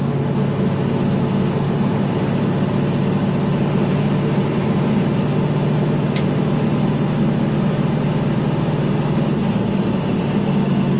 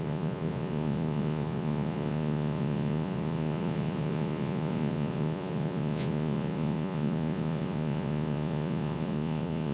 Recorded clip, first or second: first